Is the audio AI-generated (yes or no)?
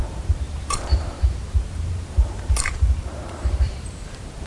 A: yes